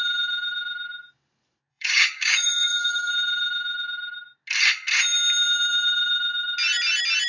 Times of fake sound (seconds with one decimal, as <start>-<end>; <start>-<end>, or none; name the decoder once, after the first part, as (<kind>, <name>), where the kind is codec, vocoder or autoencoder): 1.7-3.1 (codec, DAC)